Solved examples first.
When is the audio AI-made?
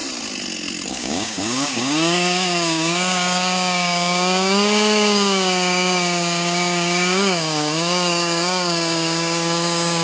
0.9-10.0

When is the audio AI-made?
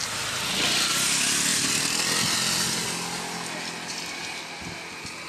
none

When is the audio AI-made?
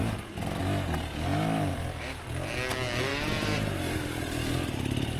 0.0-0.6; 1.7-2.2; 3.1-5.2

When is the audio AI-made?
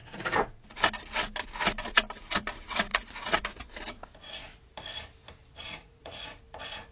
0.0-0.8; 2.9-3.5; 5.8-6.4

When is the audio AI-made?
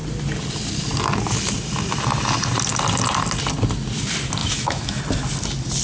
4.4-5.0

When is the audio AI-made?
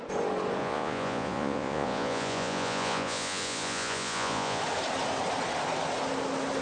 0.6-4.6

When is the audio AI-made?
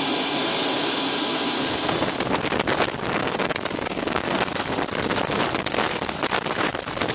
0.4-1.1; 3.2-4.2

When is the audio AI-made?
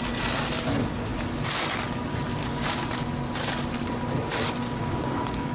2.4-2.9; 4.6-5.5